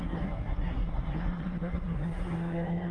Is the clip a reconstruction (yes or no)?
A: yes